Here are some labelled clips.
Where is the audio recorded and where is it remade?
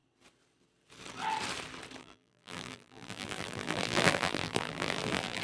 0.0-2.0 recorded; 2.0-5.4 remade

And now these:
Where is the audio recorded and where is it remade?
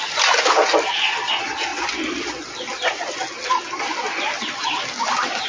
0.0-5.5 recorded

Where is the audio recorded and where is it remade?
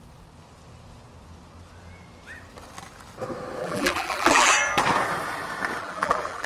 0.0-3.6 recorded; 3.6-4.5 remade; 4.5-5.8 recorded; 5.8-6.5 remade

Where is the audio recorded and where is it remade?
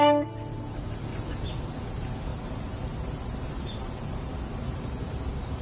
0.0-5.6 recorded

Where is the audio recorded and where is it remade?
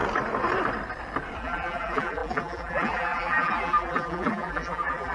0.0-1.4 recorded; 1.4-5.1 remade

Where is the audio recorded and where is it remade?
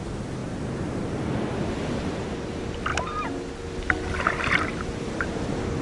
0.0-0.4 recorded; 0.4-1.2 remade; 1.2-5.8 recorded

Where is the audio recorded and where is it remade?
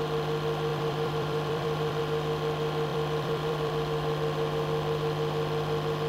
0.0-0.7 recorded; 0.7-2.0 remade; 2.0-2.9 recorded; 2.9-3.7 remade; 3.7-6.1 recorded